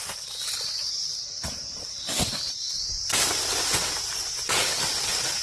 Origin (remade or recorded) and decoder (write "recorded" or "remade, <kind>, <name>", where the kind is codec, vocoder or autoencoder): remade, vocoder, BigVGAN v2